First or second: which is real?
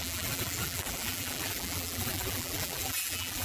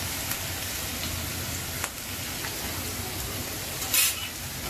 second